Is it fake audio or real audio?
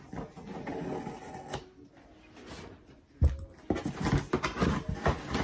real